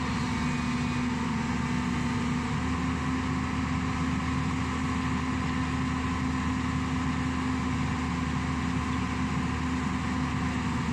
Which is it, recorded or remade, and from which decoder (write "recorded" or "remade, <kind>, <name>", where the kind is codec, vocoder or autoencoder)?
recorded